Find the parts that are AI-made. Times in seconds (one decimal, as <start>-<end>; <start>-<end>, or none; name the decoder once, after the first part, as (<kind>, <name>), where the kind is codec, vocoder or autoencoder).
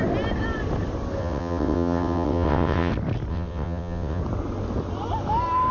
1.2-2.9 (vocoder, WaveNeXt); 3.3-4.2